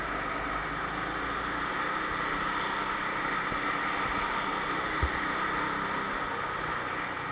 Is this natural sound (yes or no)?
yes